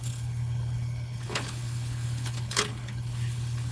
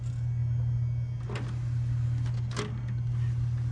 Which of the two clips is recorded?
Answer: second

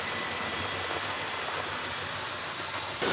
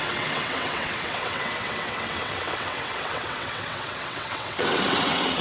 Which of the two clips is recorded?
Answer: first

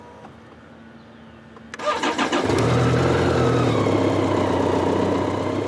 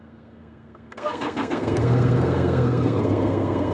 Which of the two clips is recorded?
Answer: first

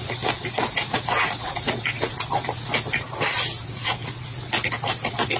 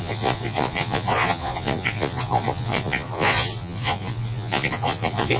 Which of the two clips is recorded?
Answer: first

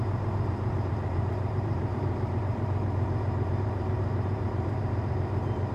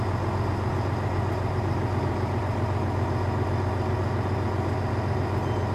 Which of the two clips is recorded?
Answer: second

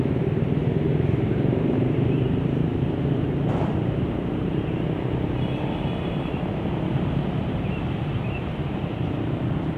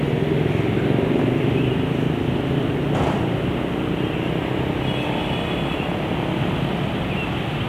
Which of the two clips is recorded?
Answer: second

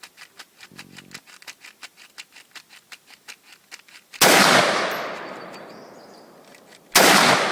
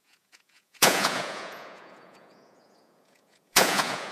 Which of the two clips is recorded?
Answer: first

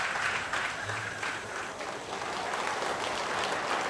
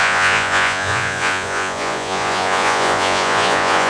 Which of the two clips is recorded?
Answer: first